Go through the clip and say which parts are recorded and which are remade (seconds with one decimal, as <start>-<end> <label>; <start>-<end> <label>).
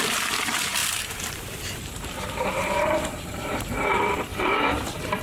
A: 0.0-0.8 recorded; 0.8-3.9 remade; 3.9-4.3 recorded; 4.3-5.2 remade